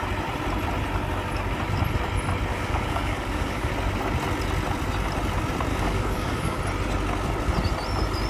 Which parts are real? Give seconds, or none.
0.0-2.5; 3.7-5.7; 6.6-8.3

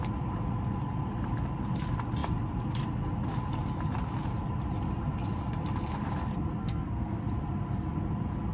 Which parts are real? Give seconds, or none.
0.0-6.6; 7.2-8.5

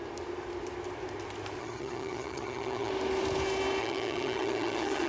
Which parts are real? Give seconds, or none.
0.0-1.6; 2.9-3.8

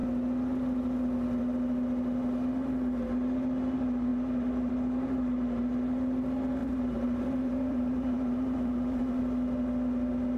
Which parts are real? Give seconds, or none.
0.0-4.1; 4.7-6.6; 9.2-10.4

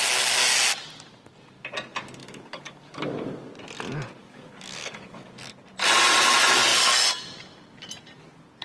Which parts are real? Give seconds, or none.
0.0-2.2; 3.5-4.2; 5.3-8.6